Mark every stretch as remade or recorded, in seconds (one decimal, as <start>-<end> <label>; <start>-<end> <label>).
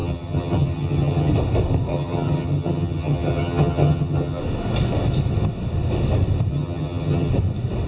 0.0-1.3 remade; 1.3-1.9 recorded; 1.9-4.4 remade; 4.4-6.5 recorded; 6.5-7.3 remade; 7.3-7.9 recorded